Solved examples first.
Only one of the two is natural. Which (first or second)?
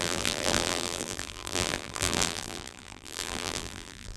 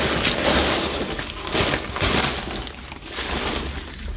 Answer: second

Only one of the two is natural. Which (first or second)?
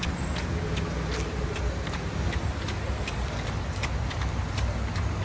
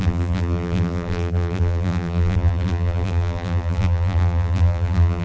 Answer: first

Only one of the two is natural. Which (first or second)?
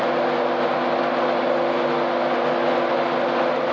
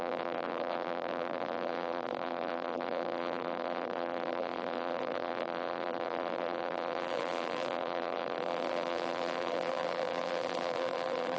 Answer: first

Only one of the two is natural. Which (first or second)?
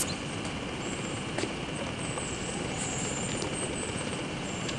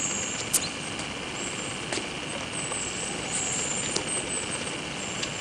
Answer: second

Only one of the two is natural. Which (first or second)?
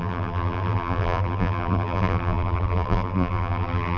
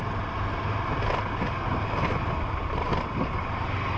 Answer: second